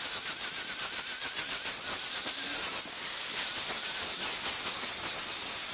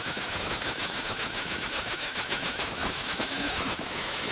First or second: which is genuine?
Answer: first